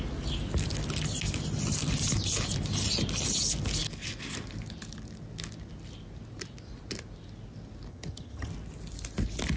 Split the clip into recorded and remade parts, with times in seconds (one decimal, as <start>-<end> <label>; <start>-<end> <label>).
0.0-7.9 recorded; 7.9-8.5 remade; 8.5-9.6 recorded